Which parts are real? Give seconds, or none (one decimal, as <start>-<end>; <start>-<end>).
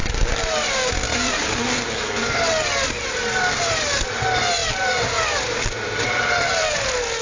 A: none